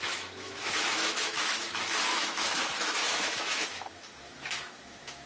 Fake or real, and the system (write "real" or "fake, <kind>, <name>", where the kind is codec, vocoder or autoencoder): fake, autoencoder, DAC-VAE